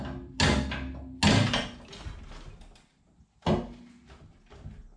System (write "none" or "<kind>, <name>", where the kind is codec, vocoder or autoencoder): none